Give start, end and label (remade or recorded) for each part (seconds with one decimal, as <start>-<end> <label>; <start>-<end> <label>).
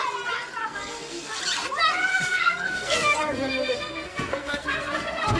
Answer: 0.0-0.6 recorded; 0.6-1.4 remade; 1.4-2.1 recorded; 2.1-5.4 remade